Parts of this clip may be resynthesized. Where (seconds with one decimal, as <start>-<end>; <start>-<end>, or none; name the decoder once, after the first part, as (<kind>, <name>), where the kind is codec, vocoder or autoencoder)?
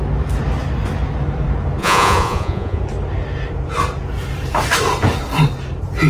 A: 1.8-2.8 (vocoder, Vocos)